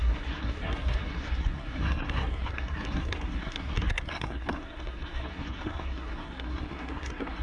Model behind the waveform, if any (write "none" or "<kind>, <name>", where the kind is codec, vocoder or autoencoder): codec, SNAC